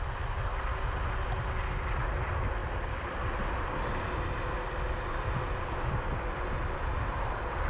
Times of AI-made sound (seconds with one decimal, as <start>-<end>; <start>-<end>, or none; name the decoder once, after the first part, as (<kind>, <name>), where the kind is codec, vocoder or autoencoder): none